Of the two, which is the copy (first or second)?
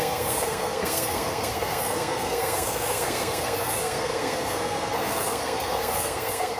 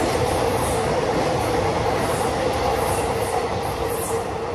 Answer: first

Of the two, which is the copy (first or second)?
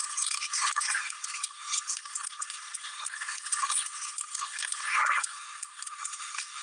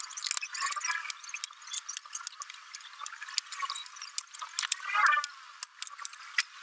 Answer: first